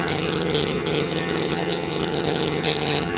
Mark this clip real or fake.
fake